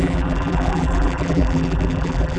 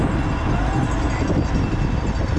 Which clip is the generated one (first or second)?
first